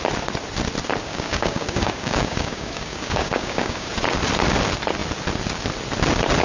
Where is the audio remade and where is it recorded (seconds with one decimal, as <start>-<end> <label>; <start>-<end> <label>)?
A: 0.0-1.0 recorded; 1.0-3.9 remade; 3.9-6.4 recorded